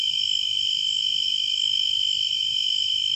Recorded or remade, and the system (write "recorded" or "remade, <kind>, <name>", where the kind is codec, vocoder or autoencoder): remade, autoencoder, DAC-VAE